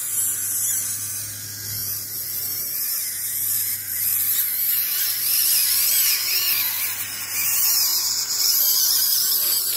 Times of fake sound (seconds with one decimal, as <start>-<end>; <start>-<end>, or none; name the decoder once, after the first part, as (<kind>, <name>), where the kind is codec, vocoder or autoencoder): 1.8-6.5 (vocoder, BigVGAN v2); 7.9-8.6